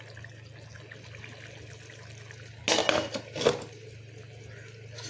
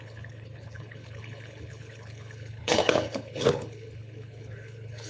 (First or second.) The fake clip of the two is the second